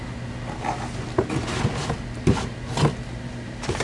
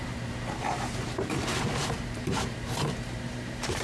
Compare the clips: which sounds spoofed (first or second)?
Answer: second